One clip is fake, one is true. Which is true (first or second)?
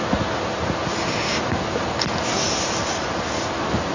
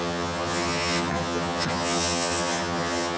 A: first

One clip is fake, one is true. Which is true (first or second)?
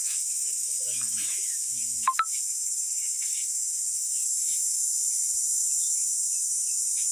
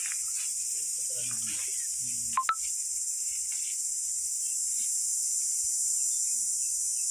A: second